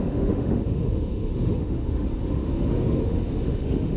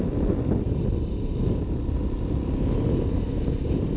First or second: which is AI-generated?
first